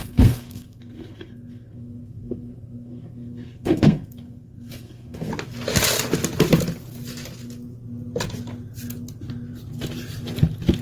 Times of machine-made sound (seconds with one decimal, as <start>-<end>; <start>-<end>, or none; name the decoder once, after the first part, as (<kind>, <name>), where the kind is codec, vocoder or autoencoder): 0.0-5.3 (codec, SNAC)